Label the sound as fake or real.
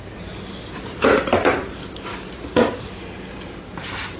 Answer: real